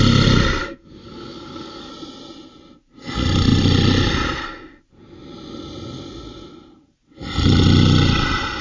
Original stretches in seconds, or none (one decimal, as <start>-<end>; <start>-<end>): 0.0-0.6; 1.9-8.6